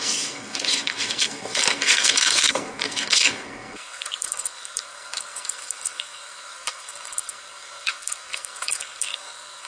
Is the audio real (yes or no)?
no